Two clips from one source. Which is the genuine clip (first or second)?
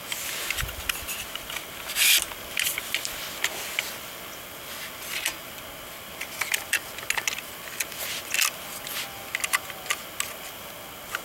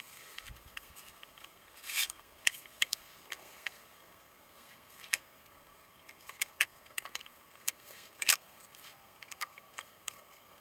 first